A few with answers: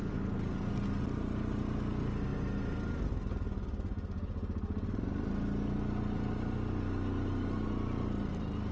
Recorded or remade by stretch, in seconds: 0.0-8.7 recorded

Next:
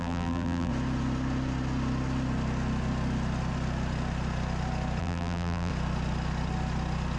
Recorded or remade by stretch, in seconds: 0.0-0.7 remade; 0.7-5.0 recorded; 5.0-5.7 remade; 5.7-7.2 recorded

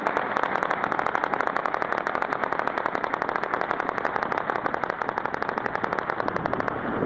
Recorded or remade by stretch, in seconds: 0.0-7.1 recorded

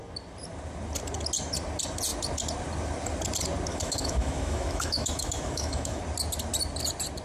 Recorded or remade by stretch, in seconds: 0.0-3.7 recorded; 3.7-6.0 remade; 6.0-7.2 recorded

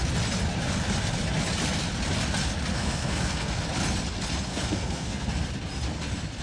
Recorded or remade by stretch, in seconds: 0.0-2.7 recorded; 2.7-3.6 remade; 3.6-4.5 recorded; 4.5-5.3 remade; 5.3-6.4 recorded